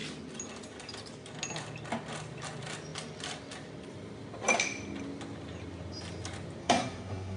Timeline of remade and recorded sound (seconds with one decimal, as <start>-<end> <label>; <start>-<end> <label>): 0.0-6.6 recorded; 6.6-7.4 remade